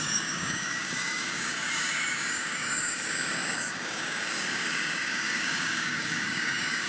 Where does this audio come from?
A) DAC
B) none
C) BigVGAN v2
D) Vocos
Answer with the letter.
A